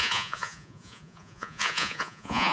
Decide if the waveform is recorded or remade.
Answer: remade